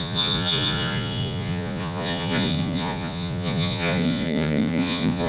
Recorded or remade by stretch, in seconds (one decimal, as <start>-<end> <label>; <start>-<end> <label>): 0.0-5.3 remade